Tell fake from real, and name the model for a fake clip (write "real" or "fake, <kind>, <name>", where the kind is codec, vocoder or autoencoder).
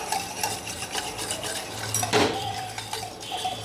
fake, vocoder, BigVGAN v2